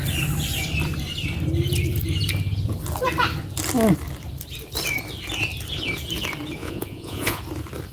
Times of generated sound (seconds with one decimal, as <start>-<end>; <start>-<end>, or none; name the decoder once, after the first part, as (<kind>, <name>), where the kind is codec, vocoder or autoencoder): 6.6-7.4 (vocoder, Vocos)

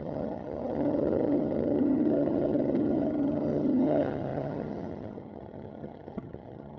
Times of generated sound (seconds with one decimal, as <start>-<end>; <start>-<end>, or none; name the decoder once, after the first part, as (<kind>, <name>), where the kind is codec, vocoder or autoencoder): 0.0-6.8 (vocoder, HiFi-GAN)

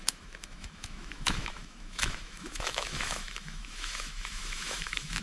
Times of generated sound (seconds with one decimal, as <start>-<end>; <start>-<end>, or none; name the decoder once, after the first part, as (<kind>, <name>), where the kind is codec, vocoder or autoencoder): 0.0-5.2 (autoencoder, DAC-VAE)

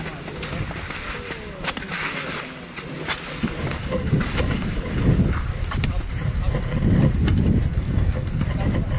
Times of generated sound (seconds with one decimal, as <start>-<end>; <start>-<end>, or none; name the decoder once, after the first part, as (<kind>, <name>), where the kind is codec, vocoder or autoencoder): 7.7-8.4 (codec, SNAC)